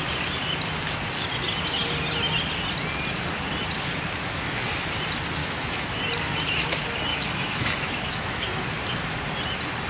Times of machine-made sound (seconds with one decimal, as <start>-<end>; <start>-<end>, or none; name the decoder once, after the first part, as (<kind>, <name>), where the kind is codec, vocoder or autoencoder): 5.4-6.0 (autoencoder, DAC-VAE); 7.1-8.7